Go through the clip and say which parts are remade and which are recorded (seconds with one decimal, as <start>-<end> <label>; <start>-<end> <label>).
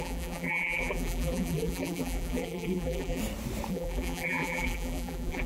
0.0-3.2 remade; 3.2-3.7 recorded; 3.7-5.5 remade